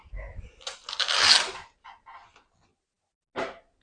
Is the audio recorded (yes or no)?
yes